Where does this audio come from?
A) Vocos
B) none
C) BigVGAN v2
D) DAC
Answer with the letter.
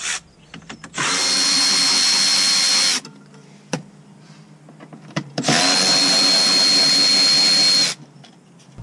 B